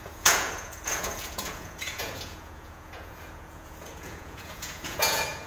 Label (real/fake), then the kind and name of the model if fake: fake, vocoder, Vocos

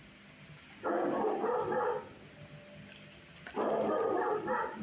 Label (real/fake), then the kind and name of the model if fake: real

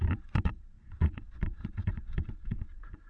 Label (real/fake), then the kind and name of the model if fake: fake, vocoder, Vocos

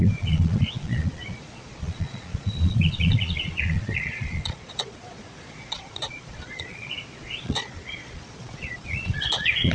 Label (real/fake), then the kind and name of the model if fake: fake, vocoder, Vocos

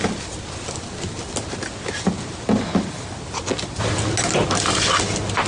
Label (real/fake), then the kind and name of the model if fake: real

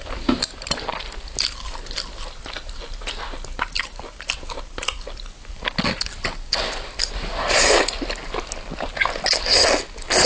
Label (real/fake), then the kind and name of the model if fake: real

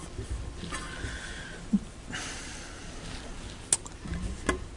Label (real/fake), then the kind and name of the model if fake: real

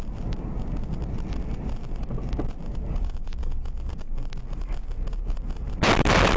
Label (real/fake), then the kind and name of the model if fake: real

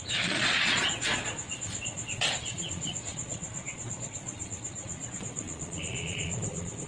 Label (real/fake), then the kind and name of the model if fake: fake, vocoder, Vocos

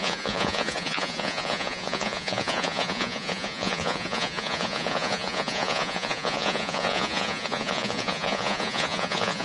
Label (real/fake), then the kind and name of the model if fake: fake, vocoder, Vocos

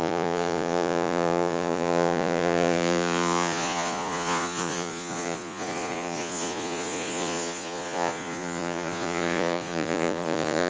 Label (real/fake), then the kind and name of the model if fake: fake, vocoder, Vocos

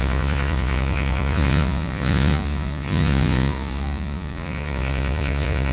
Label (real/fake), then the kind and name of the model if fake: fake, vocoder, Vocos